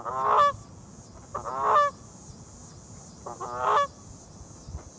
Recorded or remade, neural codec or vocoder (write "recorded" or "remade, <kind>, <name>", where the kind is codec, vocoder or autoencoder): recorded